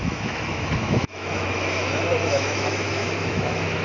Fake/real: fake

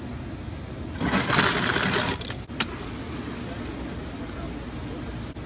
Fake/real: real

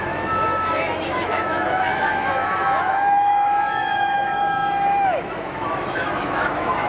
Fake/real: fake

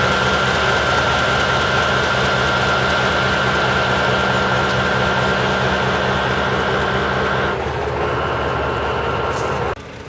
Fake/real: real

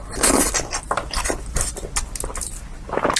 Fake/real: real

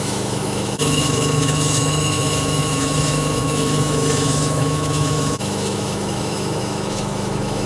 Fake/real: fake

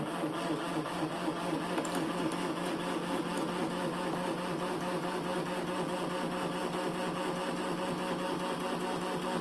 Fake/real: real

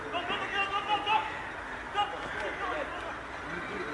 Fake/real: real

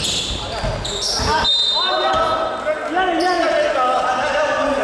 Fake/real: real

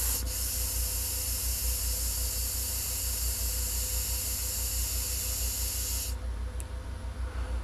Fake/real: real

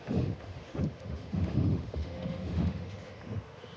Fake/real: fake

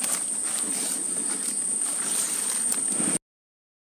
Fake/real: real